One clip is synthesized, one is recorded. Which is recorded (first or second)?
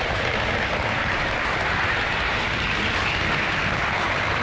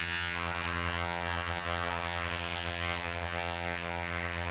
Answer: first